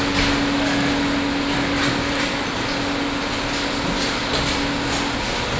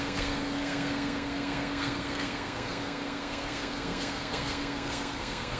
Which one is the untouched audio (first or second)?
first